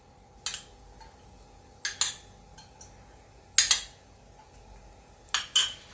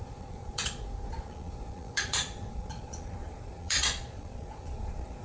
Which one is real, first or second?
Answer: first